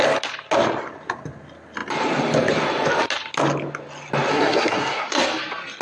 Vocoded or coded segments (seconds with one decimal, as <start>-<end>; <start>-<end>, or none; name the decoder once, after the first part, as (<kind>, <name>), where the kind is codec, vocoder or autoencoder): 4.3-5.2 (codec, SNAC)